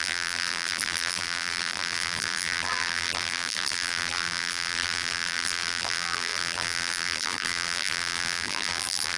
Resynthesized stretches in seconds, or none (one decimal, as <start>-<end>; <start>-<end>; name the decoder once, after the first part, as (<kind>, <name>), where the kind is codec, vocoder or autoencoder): 0.0-9.2 (vocoder, BigVGAN v2)